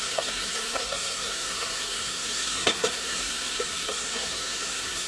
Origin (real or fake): fake